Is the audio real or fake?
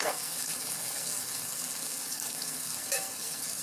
fake